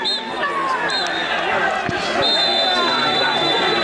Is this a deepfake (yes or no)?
no